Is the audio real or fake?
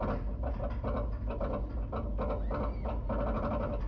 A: real